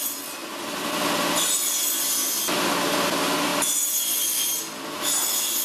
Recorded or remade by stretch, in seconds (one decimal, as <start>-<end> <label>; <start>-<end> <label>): 0.0-5.6 recorded